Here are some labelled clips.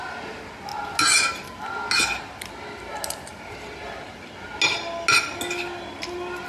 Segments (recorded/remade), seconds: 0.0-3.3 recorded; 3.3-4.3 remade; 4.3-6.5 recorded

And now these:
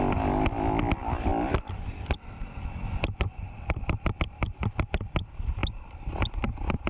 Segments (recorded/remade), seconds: 0.0-6.9 recorded

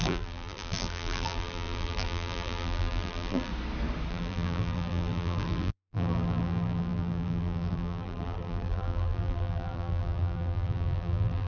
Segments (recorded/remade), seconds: 0.0-3.5 remade; 3.5-4.1 recorded; 4.1-11.5 remade

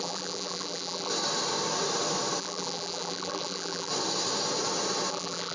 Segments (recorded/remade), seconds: 0.0-1.1 remade; 1.1-2.4 recorded; 2.4-3.9 remade; 3.9-5.1 recorded; 5.1-5.5 remade